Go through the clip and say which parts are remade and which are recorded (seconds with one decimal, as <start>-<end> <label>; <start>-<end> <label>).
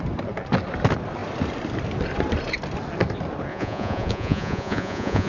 0.0-3.5 recorded; 3.5-5.3 remade